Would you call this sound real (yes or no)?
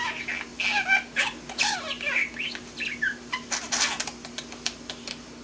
yes